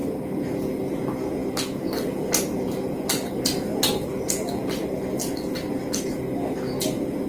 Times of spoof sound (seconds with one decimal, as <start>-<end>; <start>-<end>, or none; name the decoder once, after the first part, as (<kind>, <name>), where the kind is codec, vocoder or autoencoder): none